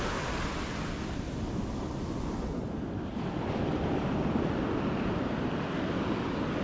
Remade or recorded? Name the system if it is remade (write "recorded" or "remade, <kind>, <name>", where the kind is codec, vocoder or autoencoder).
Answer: recorded